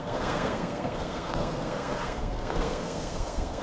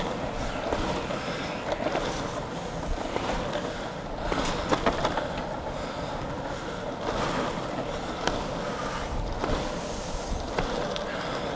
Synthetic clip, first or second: first